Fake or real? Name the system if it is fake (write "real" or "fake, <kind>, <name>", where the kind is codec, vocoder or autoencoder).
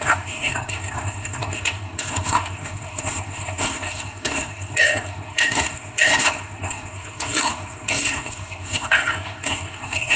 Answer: fake, codec, SNAC